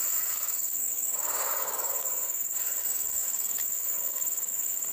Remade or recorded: remade